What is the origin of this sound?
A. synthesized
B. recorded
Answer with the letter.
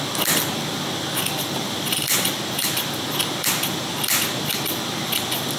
B